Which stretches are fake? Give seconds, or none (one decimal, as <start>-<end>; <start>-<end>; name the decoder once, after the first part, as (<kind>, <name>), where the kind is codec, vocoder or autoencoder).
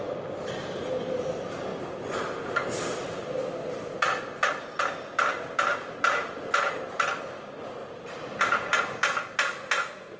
5.7-6.5 (vocoder, BigVGAN v2); 7.8-8.8